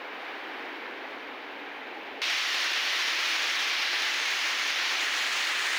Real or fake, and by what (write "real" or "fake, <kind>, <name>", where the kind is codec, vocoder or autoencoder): real